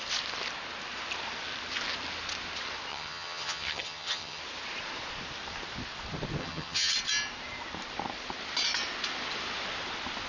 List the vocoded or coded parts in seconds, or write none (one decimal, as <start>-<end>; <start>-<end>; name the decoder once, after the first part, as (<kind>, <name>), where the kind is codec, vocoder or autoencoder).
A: 2.9-4.4 (vocoder, HiFi-GAN); 6.4-6.9